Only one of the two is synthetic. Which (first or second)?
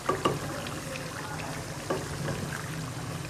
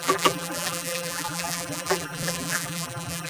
second